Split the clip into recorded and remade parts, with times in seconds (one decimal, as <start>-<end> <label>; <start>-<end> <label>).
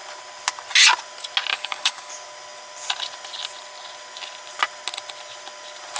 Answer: 0.0-1.5 recorded; 1.5-2.1 remade; 2.1-6.0 recorded